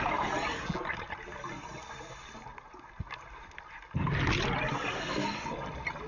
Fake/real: real